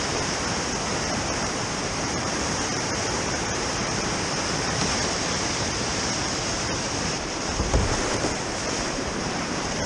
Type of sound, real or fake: fake